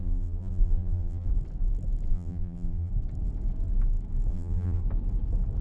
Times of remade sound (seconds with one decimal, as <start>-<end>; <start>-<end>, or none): 0.0-1.3; 2.1-2.9; 4.3-4.8

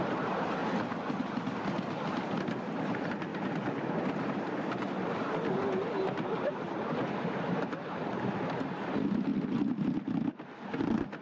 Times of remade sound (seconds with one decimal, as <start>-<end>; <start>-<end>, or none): 3.3-8.3

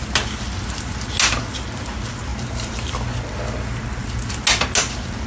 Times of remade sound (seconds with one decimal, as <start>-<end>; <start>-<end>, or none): 2.3-2.9

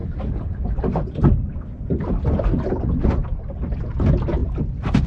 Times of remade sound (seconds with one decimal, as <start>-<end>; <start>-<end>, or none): 0.0-2.1; 4.4-5.1

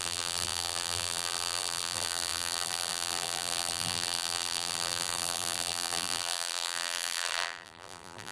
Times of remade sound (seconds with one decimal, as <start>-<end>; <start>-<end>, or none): 0.0-8.3